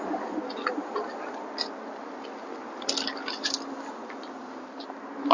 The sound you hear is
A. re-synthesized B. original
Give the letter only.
B